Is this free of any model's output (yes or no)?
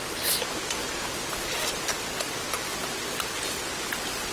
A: yes